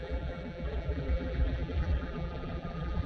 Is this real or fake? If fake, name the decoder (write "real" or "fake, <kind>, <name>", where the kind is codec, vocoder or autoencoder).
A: fake, vocoder, BigVGAN v2